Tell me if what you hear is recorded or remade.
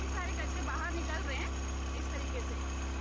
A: recorded